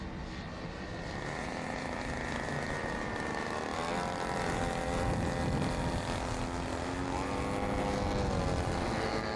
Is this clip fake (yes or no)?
no